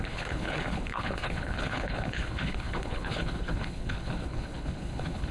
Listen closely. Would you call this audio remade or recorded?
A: remade